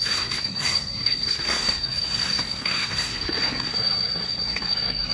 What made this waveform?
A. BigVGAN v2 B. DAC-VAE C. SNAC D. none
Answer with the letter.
C